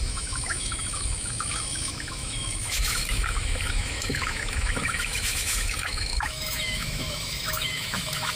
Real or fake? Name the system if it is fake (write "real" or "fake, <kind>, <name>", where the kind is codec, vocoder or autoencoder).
fake, autoencoder, DAC-VAE